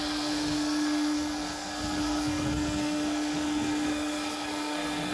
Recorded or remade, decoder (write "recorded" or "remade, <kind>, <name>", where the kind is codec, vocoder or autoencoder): remade, codec, SNAC